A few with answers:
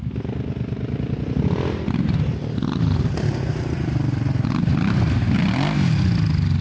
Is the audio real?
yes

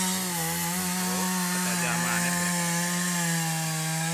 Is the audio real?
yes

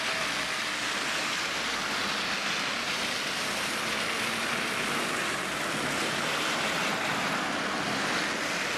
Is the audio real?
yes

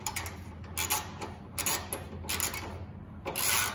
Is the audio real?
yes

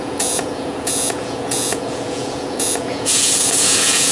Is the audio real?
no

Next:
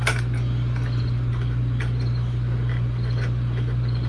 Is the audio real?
yes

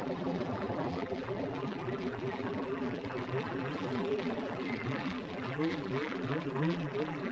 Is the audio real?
no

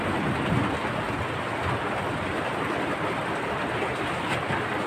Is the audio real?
yes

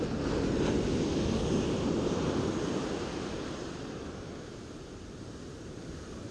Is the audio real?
yes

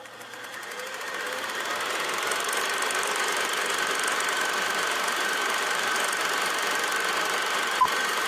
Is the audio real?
no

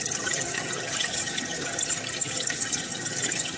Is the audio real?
no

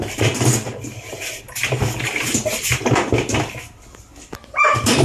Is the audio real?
yes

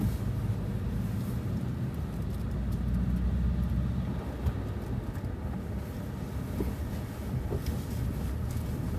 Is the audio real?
yes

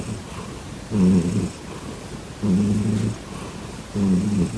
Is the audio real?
yes